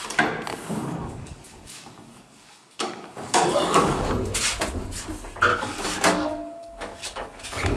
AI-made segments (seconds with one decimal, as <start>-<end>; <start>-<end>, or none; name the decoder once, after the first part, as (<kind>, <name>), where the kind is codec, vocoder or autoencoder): 0.5-4.1 (codec, DAC); 5.5-7.8